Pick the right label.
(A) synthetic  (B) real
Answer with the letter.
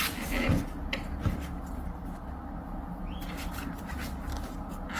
B